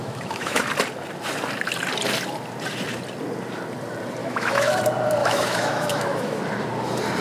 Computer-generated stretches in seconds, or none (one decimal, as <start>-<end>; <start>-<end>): 0.0-0.6; 4.2-4.8; 5.2-6.4